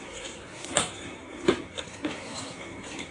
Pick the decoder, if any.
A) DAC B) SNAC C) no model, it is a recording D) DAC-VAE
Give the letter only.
B